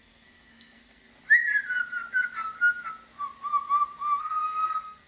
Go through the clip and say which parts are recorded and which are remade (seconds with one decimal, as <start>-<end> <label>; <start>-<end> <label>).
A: 0.0-1.1 remade; 1.1-4.2 recorded; 4.2-5.1 remade